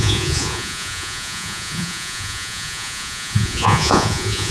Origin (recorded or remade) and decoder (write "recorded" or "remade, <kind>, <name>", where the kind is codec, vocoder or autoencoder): remade, vocoder, Vocos